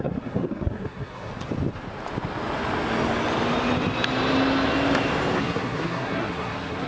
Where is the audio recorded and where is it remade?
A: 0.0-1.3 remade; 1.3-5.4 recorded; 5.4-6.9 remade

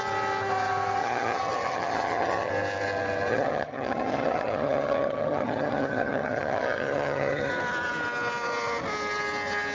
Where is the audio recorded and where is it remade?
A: 0.0-1.0 recorded; 1.0-2.5 remade; 2.5-3.3 recorded; 3.3-7.5 remade; 7.5-9.7 recorded

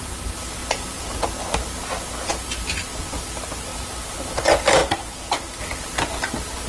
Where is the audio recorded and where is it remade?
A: 0.0-0.6 recorded; 0.6-1.2 remade; 1.2-3.7 recorded; 3.7-4.3 remade; 4.3-4.8 recorded; 4.8-5.6 remade; 5.6-6.7 recorded